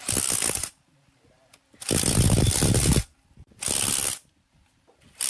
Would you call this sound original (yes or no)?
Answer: yes